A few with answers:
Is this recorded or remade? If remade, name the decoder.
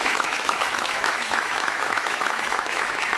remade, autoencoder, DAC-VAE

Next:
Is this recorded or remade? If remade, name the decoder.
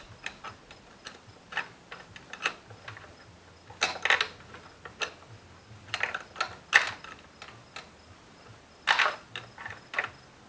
recorded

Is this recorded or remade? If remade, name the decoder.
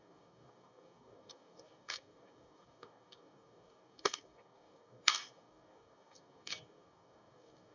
remade, codec, DAC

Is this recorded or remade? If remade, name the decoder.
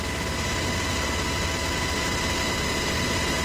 recorded